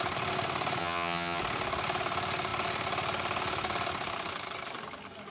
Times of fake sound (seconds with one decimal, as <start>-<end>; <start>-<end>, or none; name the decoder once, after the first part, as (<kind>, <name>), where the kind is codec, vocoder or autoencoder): 0.8-1.4 (vocoder, HiFi-GAN)